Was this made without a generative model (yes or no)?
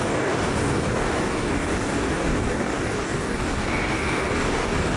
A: no